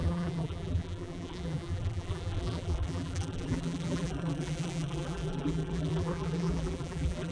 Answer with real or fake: fake